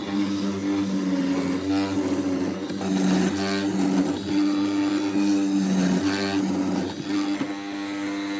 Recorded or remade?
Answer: recorded